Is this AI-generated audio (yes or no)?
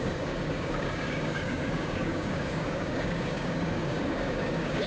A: yes